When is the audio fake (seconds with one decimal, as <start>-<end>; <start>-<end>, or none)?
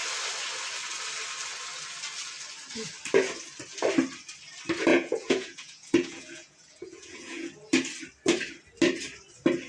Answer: 4.9-7.5